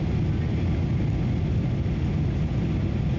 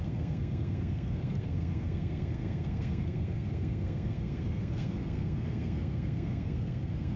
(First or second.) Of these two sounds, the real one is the first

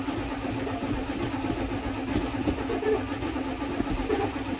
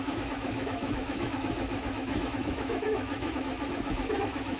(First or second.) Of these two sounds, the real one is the first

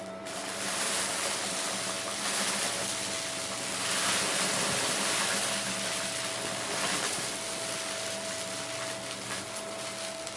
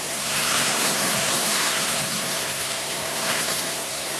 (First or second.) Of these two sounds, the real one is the first